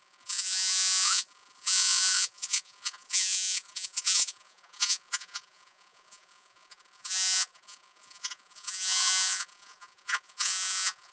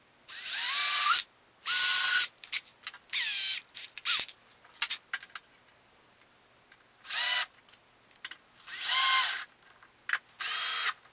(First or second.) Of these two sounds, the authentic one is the second